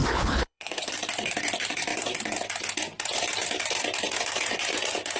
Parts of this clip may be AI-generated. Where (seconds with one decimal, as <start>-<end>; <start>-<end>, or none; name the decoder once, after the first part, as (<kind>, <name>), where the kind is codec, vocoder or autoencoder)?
0.0-0.9 (codec, HILCodec)